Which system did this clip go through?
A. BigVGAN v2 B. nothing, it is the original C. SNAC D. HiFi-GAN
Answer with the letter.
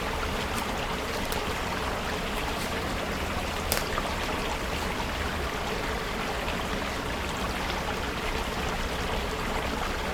B